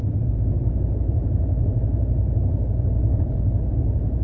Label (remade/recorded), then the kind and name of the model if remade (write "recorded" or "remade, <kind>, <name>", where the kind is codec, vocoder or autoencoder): recorded